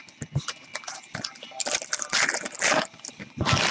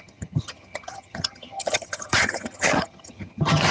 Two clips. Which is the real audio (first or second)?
first